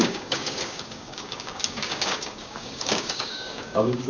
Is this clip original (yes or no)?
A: no